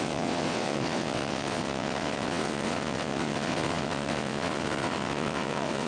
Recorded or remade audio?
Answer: remade